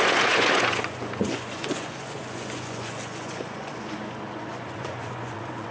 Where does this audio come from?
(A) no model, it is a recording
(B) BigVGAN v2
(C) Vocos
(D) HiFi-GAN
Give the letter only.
C